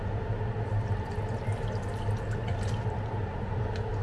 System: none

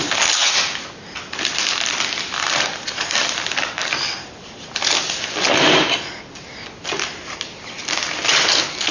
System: none